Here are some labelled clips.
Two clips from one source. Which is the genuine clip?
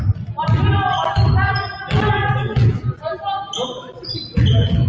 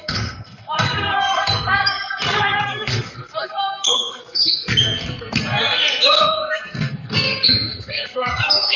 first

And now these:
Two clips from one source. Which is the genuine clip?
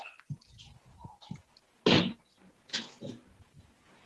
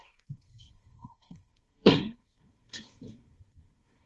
first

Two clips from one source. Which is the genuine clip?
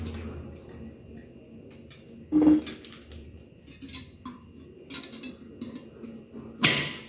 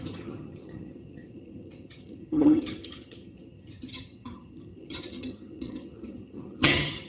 first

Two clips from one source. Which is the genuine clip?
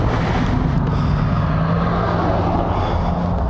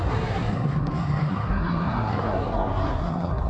first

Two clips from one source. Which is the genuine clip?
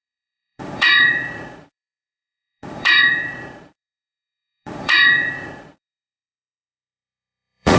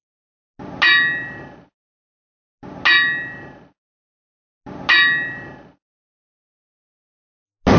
second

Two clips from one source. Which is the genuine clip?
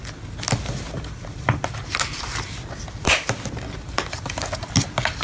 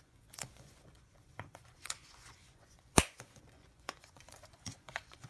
first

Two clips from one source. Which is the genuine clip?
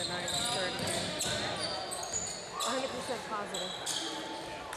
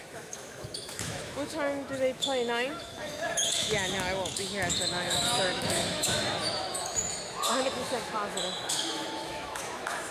first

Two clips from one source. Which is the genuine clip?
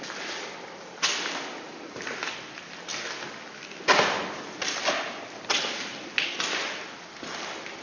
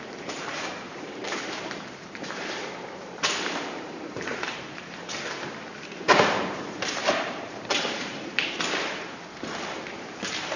first